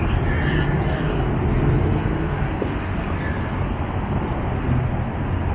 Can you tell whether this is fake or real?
real